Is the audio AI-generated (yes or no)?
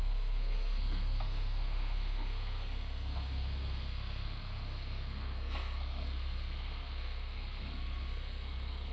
yes